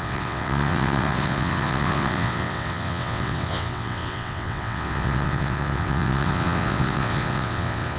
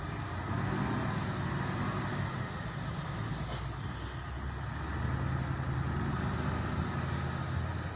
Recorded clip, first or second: second